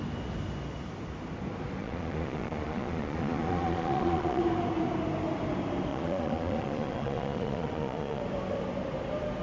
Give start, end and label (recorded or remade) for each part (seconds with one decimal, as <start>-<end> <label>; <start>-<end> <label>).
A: 0.0-1.8 recorded; 1.8-4.4 remade; 4.4-5.9 recorded; 5.9-8.2 remade; 8.2-9.4 recorded